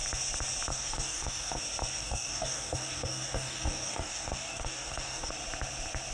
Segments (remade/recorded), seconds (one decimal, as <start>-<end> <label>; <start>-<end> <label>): 0.0-0.7 recorded; 0.7-1.6 remade; 1.6-2.0 recorded; 2.0-5.3 remade; 5.3-6.1 recorded